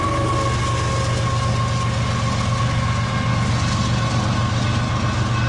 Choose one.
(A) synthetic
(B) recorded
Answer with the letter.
B